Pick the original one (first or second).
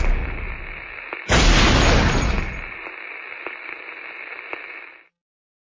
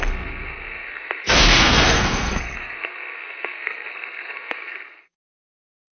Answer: first